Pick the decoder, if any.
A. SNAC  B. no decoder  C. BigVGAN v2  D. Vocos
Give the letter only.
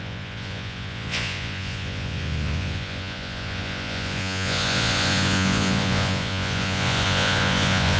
D